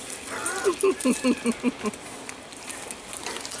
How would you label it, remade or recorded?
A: recorded